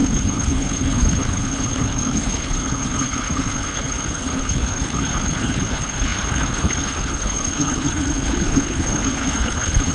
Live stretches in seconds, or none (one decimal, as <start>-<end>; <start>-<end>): none